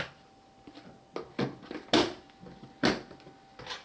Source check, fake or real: real